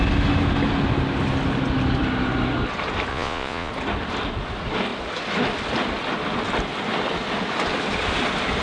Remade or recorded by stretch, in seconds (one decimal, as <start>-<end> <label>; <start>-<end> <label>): 0.0-3.1 recorded; 3.1-3.7 remade; 3.7-8.6 recorded